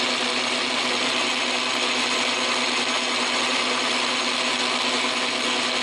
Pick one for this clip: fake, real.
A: real